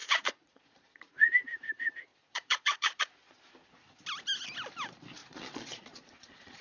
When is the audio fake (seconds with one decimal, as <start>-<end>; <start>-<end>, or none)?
0.0-1.3; 2.1-3.3; 5.2-6.6